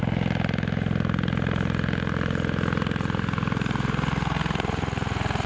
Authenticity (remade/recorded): recorded